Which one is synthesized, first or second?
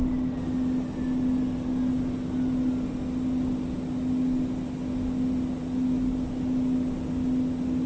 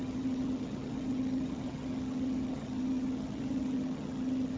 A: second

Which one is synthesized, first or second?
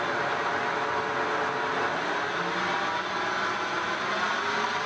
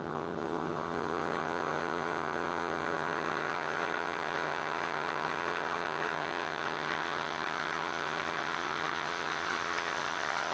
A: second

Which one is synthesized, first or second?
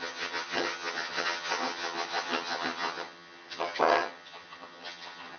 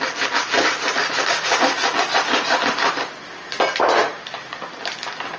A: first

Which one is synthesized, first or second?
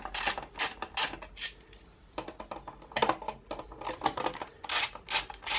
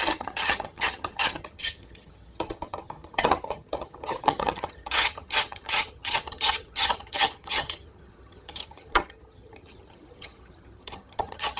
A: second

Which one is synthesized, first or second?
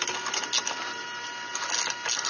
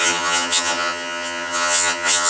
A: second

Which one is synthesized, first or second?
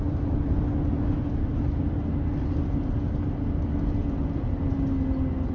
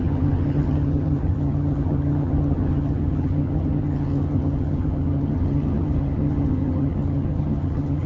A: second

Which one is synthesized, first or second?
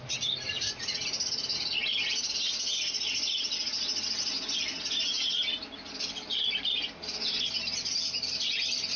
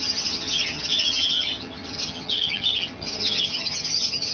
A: second